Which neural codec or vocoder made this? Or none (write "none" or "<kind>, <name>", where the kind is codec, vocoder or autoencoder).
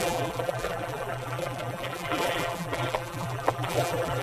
vocoder, BigVGAN v2